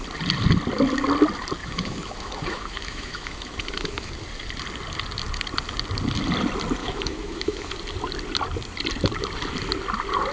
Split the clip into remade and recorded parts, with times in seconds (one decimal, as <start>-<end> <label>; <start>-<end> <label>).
0.0-1.6 recorded; 1.6-4.1 remade; 4.1-6.8 recorded; 6.8-7.7 remade; 7.7-10.3 recorded